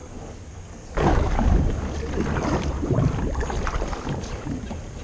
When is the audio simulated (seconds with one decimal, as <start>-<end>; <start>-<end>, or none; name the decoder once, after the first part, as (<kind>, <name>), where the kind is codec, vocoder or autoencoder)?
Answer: 0.0-2.1 (codec, DAC)